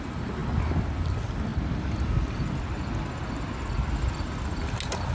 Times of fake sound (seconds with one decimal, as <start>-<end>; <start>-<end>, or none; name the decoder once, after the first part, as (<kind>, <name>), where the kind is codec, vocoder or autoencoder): none